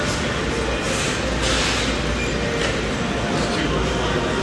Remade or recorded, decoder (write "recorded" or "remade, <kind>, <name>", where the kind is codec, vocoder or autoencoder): recorded